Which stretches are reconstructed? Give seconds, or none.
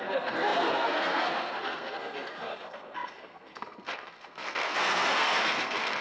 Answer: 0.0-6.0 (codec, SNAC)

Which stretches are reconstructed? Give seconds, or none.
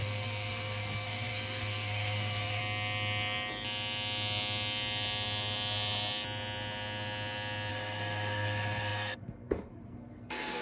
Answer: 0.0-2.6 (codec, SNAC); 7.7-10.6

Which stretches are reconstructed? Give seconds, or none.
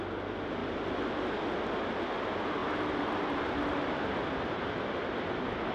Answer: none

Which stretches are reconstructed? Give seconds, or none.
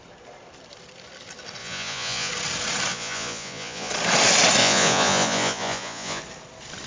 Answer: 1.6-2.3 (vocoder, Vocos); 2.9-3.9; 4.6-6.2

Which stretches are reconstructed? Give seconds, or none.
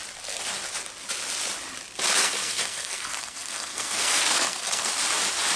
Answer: 2.2-4.9 (codec, SNAC)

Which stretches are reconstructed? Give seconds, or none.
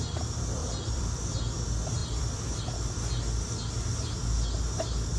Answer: 0.6-1.3 (vocoder, BigVGAN v2); 2.0-2.6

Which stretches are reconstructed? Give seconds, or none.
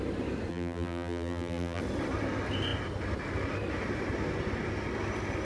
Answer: 0.5-1.8 (vocoder, BigVGAN v2)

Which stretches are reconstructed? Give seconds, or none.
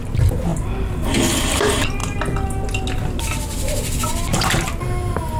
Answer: none